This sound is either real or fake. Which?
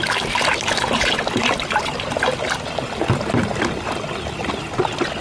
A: real